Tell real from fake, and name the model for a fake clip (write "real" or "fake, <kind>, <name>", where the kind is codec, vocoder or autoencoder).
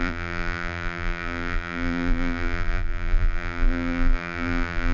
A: fake, vocoder, BigVGAN v2